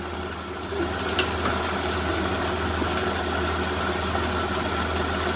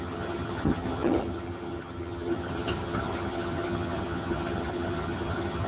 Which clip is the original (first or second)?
first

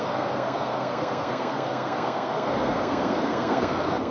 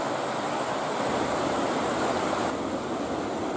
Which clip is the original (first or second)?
second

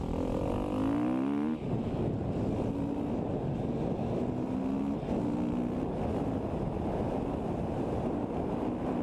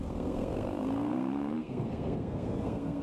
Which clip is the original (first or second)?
first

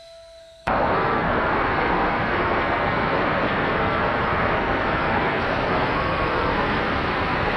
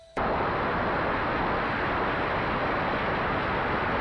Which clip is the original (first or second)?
second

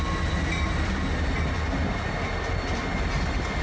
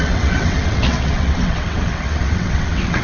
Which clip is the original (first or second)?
first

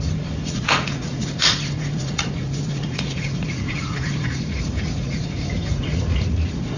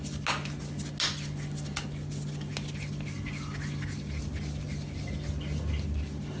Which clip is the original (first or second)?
second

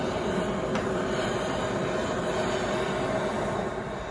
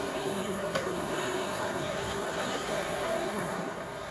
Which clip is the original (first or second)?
first